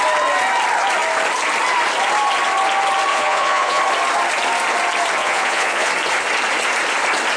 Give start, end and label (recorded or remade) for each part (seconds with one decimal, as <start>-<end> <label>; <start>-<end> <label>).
0.0-3.1 recorded; 3.1-3.8 remade; 3.8-5.2 recorded; 5.2-5.9 remade; 5.9-7.4 recorded